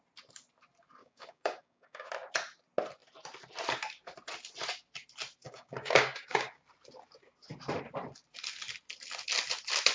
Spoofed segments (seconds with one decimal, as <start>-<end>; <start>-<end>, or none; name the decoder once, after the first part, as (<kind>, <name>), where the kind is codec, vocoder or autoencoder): 1.0-2.1 (codec, DAC); 5.4-6.6